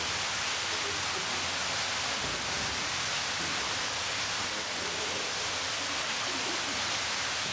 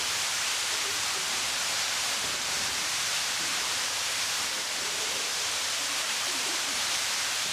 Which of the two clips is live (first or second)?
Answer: first